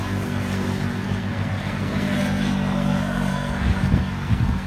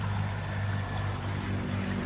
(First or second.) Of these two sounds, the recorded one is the second